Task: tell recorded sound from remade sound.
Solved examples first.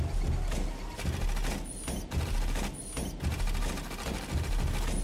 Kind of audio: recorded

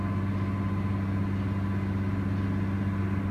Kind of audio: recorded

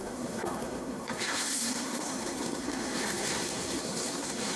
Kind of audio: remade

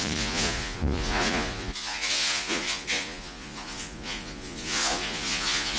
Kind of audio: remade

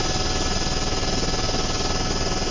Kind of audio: recorded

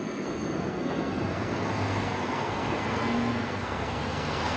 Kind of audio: remade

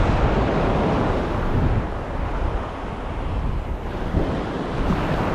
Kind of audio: recorded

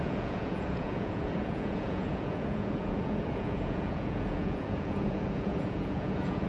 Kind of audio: remade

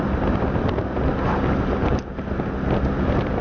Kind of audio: recorded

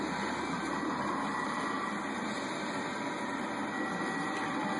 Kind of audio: recorded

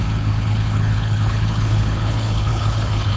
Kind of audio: remade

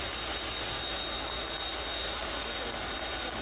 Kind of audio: recorded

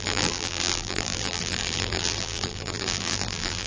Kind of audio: remade